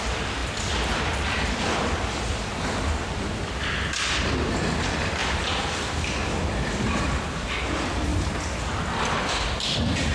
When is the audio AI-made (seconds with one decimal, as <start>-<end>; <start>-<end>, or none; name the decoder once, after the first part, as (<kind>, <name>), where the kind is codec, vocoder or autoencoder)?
0.0-2.5 (vocoder, BigVGAN v2); 3.0-8.1; 9.5-10.1